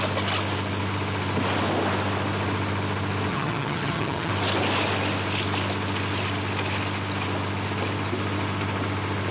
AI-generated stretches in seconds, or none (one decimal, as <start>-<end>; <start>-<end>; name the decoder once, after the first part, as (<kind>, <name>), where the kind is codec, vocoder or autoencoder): 3.3-4.3 (vocoder, HiFi-GAN)